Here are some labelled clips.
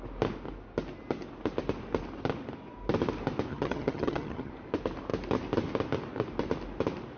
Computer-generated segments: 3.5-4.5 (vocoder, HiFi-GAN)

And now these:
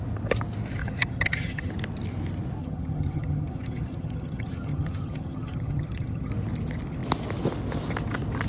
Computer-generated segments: 0.8-1.7 (vocoder, HiFi-GAN); 2.6-6.3